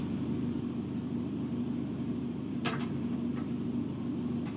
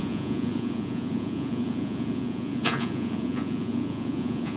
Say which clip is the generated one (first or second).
second